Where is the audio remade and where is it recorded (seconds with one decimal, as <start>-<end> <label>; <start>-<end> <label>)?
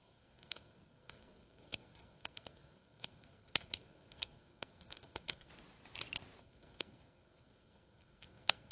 0.0-5.5 remade; 5.5-6.4 recorded; 6.4-8.7 remade